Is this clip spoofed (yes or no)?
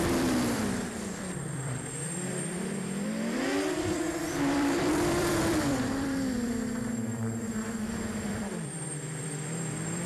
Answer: yes